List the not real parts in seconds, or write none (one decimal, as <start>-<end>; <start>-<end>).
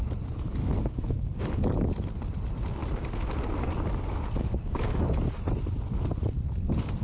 0.6-1.4